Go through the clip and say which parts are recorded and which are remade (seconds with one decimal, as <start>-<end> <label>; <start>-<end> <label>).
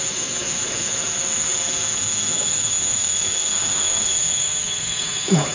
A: 0.0-5.5 remade